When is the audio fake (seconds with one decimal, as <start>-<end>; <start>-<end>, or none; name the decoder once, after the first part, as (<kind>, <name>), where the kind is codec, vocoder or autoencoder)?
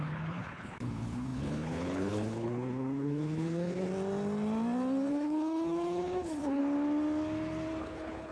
0.0-3.9 (codec, HILCodec); 5.1-6.6; 7.8-8.3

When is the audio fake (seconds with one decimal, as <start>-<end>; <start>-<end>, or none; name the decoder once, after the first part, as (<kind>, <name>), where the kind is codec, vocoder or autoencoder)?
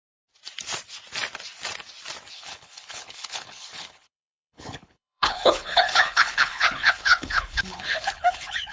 2.3-8.7 (codec, HILCodec)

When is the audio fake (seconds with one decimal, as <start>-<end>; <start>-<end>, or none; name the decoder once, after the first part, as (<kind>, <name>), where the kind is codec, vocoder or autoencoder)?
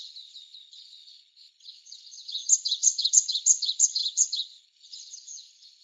0.0-5.8 (codec, HILCodec)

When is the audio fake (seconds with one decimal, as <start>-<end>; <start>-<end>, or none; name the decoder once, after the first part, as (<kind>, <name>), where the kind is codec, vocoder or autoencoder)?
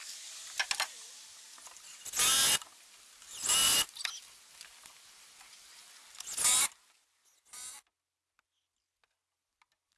none